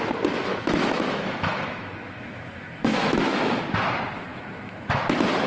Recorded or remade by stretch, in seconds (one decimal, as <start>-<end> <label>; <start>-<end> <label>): 0.0-0.5 recorded; 0.5-3.6 remade; 3.6-4.3 recorded; 4.3-5.0 remade; 5.0-5.5 recorded